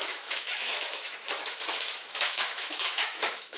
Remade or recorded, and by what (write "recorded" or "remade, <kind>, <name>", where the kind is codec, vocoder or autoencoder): remade, autoencoder, DAC-VAE